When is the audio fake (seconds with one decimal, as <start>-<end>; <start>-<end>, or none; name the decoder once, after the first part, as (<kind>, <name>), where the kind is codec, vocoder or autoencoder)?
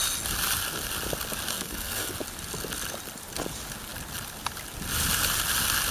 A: 1.5-2.1 (codec, SNAC)